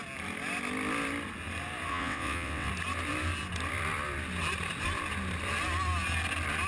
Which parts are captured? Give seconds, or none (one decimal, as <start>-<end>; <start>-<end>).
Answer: 0.0-1.9; 2.7-6.7